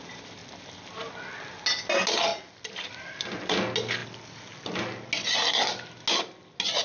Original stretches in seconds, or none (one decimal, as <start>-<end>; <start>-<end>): 0.0-6.8